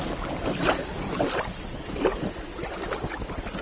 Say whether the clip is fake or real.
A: real